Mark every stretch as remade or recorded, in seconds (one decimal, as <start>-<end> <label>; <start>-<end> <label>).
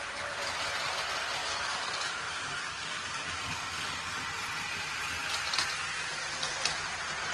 0.0-1.4 recorded; 1.4-4.2 remade; 4.2-7.3 recorded